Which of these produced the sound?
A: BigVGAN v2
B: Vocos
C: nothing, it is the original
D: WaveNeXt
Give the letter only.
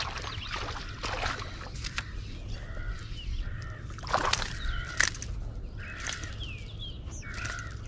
C